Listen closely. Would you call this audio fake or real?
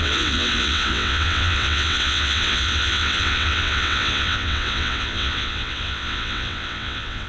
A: fake